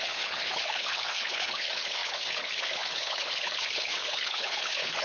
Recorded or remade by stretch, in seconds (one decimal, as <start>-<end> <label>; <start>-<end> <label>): 0.0-5.0 remade